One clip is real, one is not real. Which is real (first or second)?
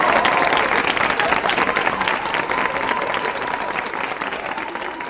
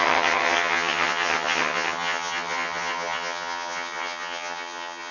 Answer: first